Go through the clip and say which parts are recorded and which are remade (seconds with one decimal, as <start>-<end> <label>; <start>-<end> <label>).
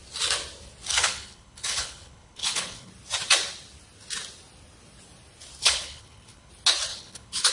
0.0-0.9 recorded; 0.9-2.9 remade; 2.9-5.6 recorded; 5.6-6.5 remade; 6.5-6.9 recorded; 6.9-7.5 remade